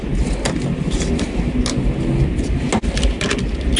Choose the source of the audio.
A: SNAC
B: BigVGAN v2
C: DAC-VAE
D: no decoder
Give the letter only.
D